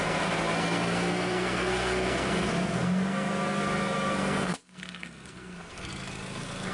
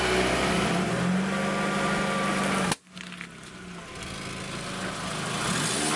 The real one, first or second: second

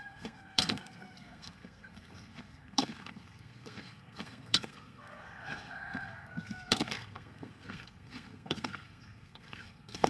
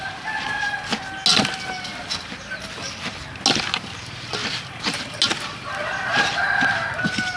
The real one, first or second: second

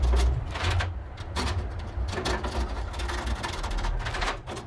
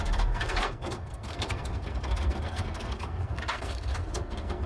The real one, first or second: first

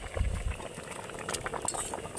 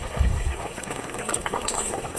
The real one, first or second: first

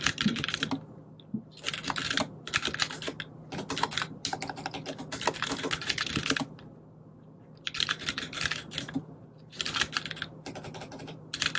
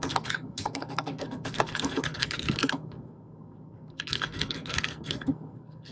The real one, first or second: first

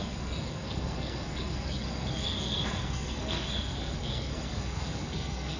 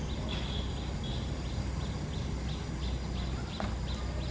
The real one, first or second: second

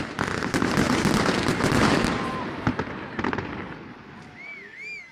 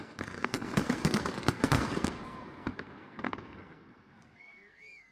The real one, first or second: first